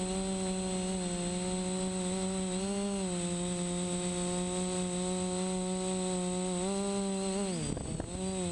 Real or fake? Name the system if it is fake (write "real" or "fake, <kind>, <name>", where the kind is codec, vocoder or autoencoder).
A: real